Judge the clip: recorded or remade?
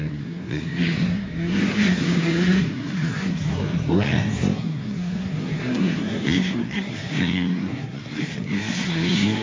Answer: remade